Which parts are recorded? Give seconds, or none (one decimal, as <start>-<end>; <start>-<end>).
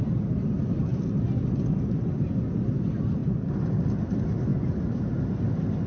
0.9-2.1; 3.2-4.1; 4.5-5.9